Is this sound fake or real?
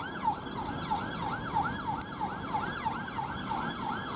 real